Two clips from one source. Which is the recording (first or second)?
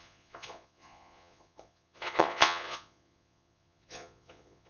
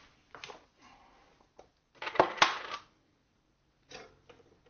second